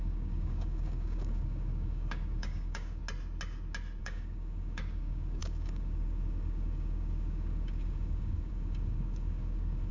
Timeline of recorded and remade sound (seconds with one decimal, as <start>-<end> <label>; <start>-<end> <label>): 0.0-3.0 remade; 3.0-4.0 recorded; 4.0-9.9 remade